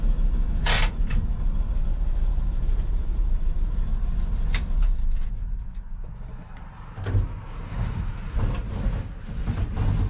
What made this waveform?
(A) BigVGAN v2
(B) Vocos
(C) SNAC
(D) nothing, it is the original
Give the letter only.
D